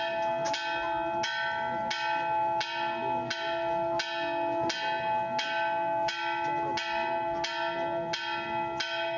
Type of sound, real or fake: real